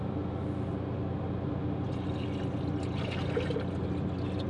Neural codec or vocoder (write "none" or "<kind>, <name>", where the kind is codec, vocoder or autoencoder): none